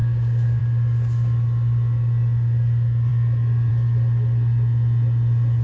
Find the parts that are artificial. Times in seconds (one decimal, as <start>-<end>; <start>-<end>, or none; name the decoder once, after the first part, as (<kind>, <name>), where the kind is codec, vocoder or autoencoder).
0.0-0.6 (codec, DAC)